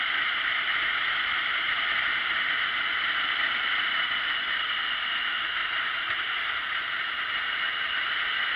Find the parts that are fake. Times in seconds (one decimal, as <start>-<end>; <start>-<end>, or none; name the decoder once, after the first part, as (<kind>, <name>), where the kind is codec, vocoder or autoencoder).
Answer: 5.6-8.0 (vocoder, BigVGAN v2)